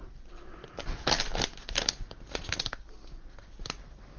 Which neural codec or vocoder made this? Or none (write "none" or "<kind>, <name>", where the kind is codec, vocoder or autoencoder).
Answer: none